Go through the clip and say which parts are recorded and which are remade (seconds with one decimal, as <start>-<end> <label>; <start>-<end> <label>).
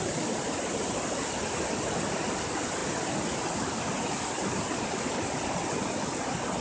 0.0-6.6 recorded